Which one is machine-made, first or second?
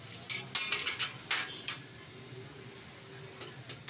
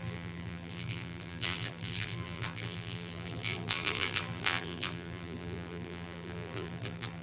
second